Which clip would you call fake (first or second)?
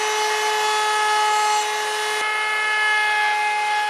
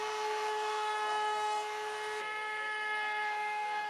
second